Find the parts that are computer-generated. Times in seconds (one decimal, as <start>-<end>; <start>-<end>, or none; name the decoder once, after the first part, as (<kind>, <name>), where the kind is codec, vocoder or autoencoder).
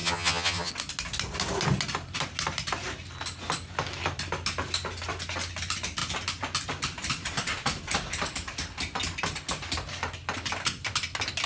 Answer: 0.0-0.7 (vocoder, HiFi-GAN)